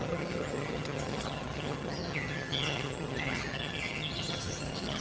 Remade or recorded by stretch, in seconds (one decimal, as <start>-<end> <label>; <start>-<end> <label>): 0.0-5.0 remade